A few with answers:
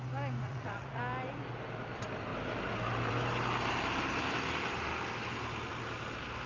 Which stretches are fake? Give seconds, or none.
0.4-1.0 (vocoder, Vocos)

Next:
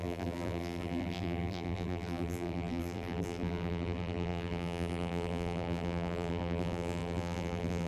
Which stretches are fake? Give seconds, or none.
0.0-7.9 (vocoder, BigVGAN v2)

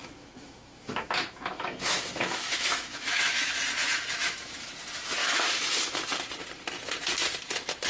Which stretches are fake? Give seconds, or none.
0.0-3.5 (autoencoder, DAC-VAE); 4.2-4.7; 5.2-6.0

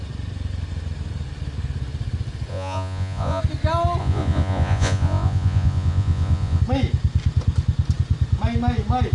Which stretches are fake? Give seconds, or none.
2.5-3.4 (vocoder, Vocos); 4.0-6.6

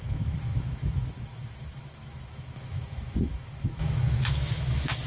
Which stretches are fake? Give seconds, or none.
0.0-5.1 (autoencoder, DAC-VAE)

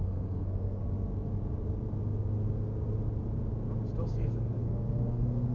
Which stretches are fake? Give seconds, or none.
0.0-0.8 (codec, SNAC); 4.1-5.5